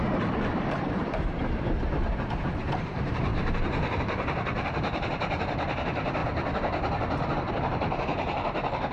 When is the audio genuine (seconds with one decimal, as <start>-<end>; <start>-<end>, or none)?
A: 6.2-7.5